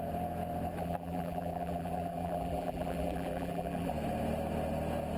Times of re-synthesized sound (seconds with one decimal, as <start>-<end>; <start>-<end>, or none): 0.8-3.9